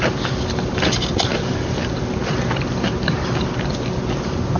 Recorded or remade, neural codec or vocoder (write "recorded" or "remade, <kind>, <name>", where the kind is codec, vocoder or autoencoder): recorded